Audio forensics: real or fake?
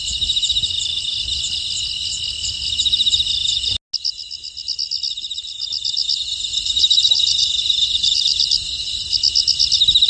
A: real